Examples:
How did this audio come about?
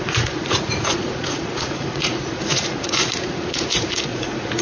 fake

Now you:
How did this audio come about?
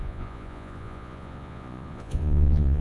fake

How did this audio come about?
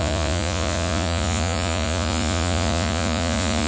fake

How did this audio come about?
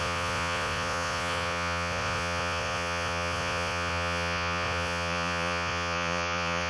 fake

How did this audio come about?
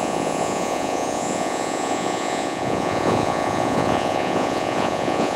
fake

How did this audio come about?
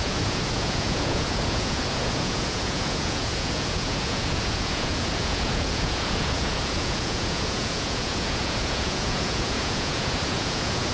fake